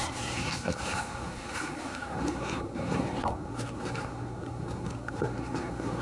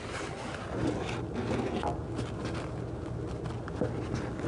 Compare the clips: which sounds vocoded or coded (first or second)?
first